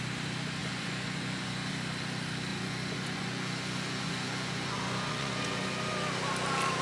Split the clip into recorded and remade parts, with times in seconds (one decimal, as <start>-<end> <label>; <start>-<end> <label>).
0.0-0.6 recorded; 0.6-1.7 remade; 1.7-2.5 recorded; 2.5-5.7 remade; 5.7-6.8 recorded